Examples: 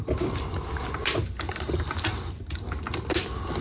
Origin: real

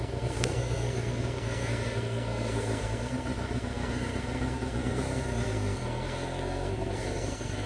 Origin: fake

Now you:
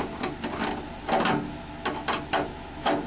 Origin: real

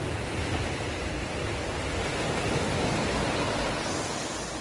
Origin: real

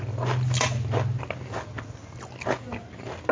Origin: real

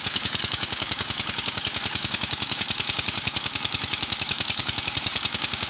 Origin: fake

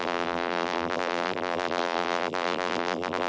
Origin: fake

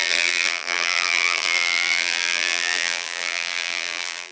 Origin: fake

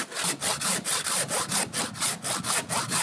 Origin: real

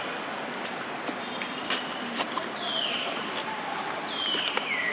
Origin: real